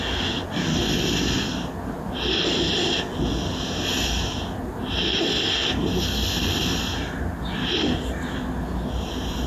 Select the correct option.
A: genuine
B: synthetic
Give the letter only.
A